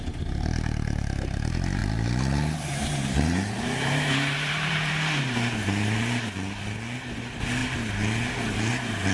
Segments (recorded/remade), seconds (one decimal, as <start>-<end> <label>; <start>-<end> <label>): 0.0-1.8 recorded; 1.8-6.3 remade; 6.3-9.1 recorded